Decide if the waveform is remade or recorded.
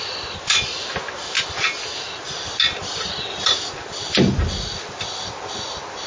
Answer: recorded